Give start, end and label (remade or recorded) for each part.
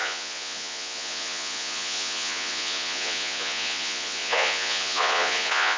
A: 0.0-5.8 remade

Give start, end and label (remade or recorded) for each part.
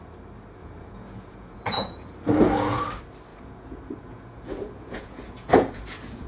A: 0.0-0.6 recorded; 0.6-2.8 remade; 2.8-3.3 recorded; 3.3-6.3 remade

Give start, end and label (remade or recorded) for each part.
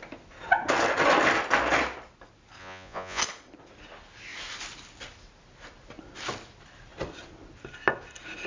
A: 0.0-2.6 recorded; 2.6-3.2 remade; 3.2-8.5 recorded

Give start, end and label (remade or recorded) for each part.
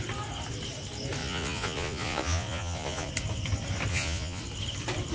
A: 0.0-1.2 recorded; 1.2-3.1 remade; 3.1-3.9 recorded; 3.9-4.4 remade; 4.4-5.1 recorded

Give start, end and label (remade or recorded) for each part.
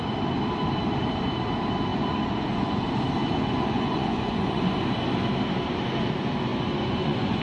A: 0.0-1.9 recorded; 1.9-2.8 remade; 2.8-3.2 recorded; 3.2-4.7 remade; 4.7-6.5 recorded; 6.5-7.4 remade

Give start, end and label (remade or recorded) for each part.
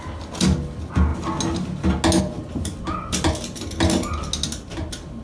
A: 0.0-5.2 recorded